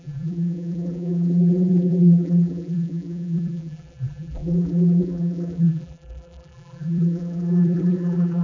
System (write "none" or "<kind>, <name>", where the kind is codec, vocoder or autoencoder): vocoder, BigVGAN v2